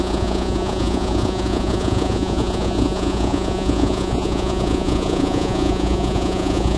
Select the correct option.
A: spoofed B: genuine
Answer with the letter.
A